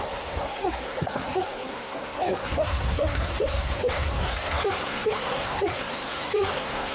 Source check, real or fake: fake